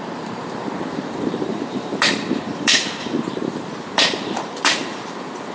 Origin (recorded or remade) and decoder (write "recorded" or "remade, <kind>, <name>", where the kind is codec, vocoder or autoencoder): remade, vocoder, BigVGAN v2